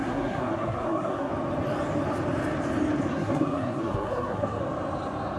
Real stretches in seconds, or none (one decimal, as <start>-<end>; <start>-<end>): 1.3-3.1; 4.6-5.4